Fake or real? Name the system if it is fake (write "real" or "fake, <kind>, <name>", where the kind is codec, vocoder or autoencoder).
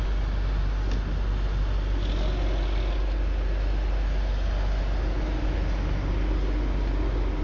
real